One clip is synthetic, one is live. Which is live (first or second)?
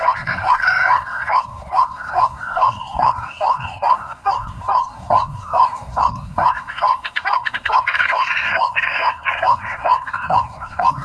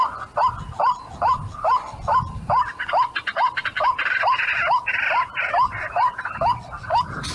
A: second